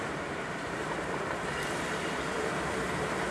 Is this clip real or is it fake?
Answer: fake